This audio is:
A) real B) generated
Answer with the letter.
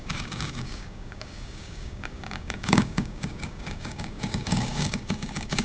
B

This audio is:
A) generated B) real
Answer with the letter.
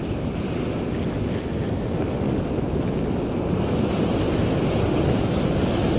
B